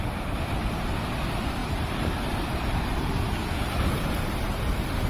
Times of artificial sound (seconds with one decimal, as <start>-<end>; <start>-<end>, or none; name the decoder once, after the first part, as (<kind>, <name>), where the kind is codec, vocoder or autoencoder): 1.6-5.1 (vocoder, BigVGAN v2)